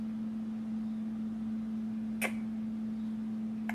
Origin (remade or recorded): recorded